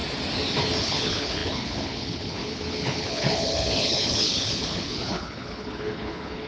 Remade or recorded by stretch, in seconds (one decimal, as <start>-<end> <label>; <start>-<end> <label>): 0.0-0.8 recorded; 0.8-6.5 remade